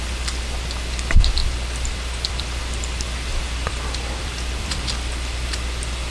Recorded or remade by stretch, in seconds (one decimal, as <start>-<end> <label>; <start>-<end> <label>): 0.0-1.4 recorded; 1.4-2.6 remade; 2.6-3.3 recorded; 3.3-6.1 remade